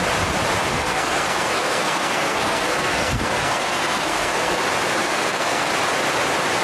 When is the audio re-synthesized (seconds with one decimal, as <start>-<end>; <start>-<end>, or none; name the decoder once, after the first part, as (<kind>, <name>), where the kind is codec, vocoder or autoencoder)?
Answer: 0.6-4.6 (codec, SNAC); 5.0-5.7